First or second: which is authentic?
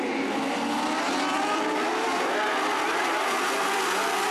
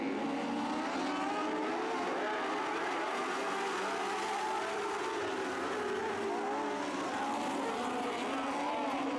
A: second